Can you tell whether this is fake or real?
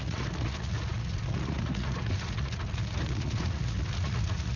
fake